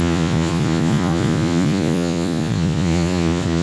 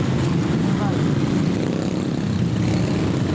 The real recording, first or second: second